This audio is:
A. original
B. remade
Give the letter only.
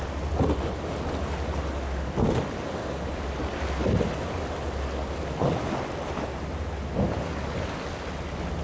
A